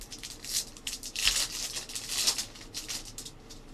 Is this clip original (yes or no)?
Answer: yes